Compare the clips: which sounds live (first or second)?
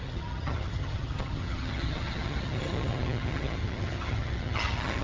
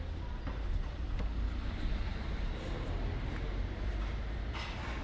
second